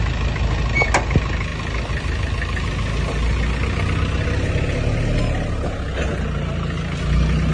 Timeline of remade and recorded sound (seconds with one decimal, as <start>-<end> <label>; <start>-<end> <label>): 0.0-7.5 recorded